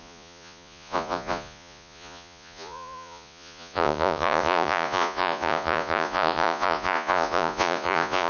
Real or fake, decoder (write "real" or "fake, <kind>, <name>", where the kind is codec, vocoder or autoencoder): fake, vocoder, Vocos